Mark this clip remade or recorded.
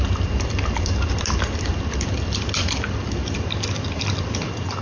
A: recorded